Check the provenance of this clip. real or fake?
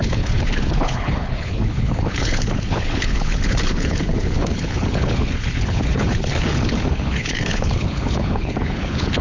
fake